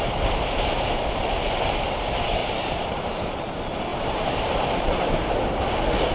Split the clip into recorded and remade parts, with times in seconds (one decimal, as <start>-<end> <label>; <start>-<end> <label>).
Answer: 0.0-2.4 recorded; 2.4-3.2 remade; 3.2-3.9 recorded; 3.9-5.6 remade; 5.6-6.1 recorded